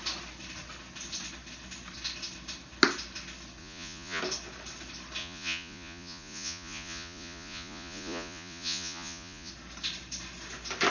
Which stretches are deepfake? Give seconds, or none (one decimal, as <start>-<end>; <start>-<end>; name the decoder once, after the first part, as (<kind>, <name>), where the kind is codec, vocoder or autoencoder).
3.6-4.2 (vocoder, Vocos); 5.2-9.5